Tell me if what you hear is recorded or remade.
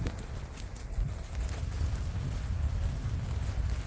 recorded